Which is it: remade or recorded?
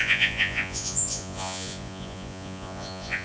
remade